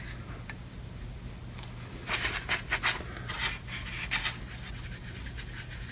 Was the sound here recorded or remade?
recorded